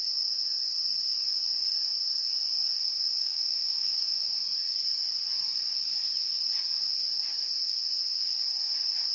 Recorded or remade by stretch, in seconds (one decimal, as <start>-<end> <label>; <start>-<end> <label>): 0.0-3.2 recorded; 3.2-4.4 remade; 4.4-9.1 recorded